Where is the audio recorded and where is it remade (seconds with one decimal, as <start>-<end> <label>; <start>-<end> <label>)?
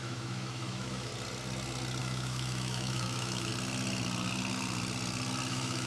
0.0-1.1 remade; 1.1-2.0 recorded; 2.0-3.5 remade; 3.5-5.5 recorded; 5.5-5.9 remade